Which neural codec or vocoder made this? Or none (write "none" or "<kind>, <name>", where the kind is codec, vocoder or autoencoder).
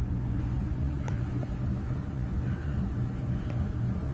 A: vocoder, Vocos